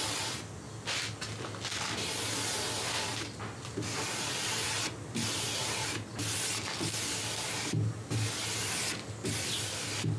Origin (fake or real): real